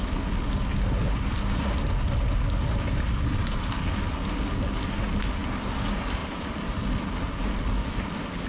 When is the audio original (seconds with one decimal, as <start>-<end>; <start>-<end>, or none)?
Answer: 0.0-8.5